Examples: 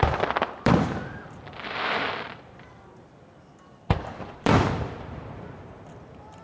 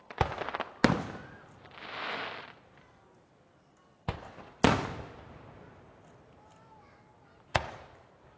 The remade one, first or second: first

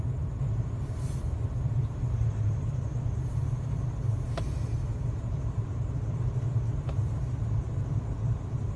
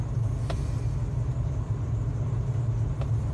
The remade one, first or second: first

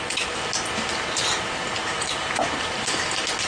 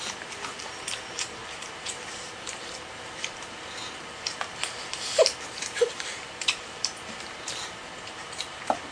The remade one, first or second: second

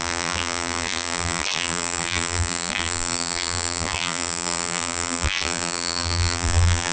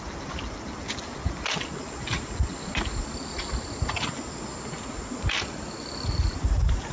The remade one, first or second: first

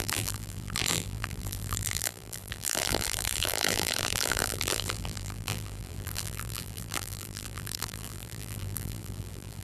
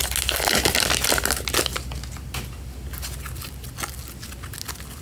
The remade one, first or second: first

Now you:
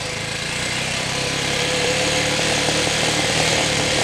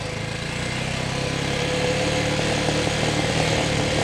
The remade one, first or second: first